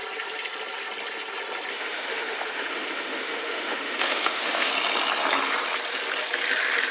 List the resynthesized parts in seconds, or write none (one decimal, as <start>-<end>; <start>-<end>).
1.7-4.7